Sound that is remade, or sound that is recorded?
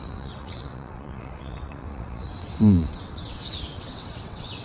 remade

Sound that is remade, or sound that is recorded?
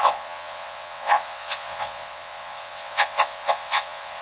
remade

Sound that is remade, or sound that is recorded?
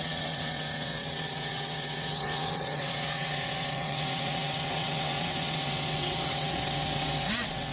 remade